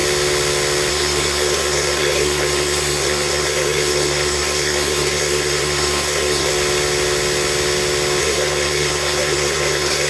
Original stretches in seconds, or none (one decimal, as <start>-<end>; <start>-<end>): 0.0-0.9; 6.5-8.2